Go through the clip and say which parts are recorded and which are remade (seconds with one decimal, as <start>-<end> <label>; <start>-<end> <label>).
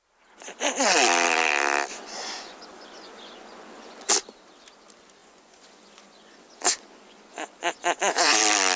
0.0-1.9 recorded; 1.9-4.1 remade; 4.1-5.2 recorded; 5.2-8.4 remade; 8.4-8.8 recorded